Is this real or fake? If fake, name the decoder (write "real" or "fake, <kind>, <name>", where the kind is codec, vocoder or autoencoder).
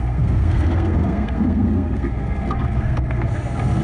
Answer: fake, codec, SNAC